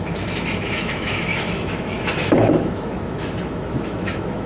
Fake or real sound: fake